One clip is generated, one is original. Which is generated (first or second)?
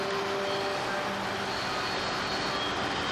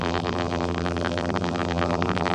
second